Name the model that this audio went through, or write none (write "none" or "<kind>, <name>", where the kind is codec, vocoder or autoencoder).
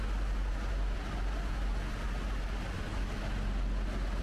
none